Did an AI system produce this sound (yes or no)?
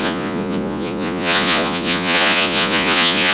yes